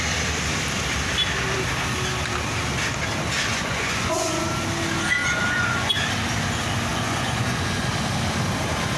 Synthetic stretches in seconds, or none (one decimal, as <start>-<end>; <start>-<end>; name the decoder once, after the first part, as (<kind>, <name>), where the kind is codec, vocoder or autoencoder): 3.5-4.4 (vocoder, Vocos); 5.2-5.9; 6.9-7.9